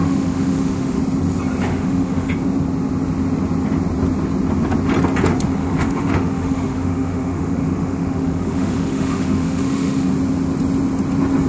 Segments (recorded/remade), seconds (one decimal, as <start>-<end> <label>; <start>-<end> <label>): 0.0-1.0 remade; 1.0-1.7 recorded; 1.7-2.3 remade; 2.3-5.6 recorded; 5.6-10.1 remade; 10.1-11.5 recorded